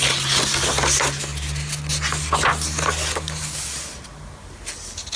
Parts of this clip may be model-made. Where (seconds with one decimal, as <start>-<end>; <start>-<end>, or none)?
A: none